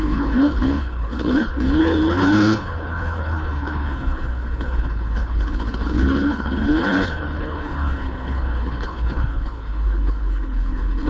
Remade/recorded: remade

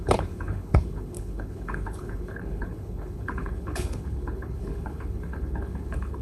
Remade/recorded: remade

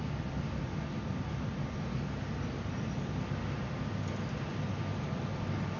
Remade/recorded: recorded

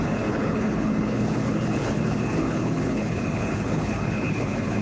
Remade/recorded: remade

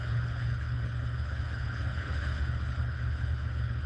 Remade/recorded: remade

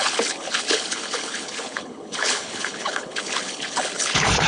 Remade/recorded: remade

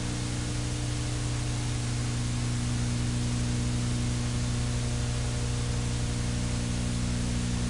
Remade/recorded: recorded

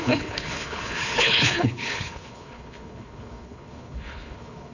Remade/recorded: remade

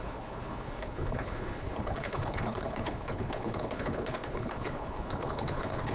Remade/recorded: remade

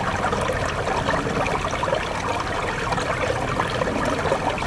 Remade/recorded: recorded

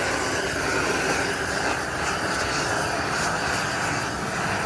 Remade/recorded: recorded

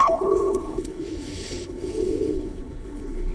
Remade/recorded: remade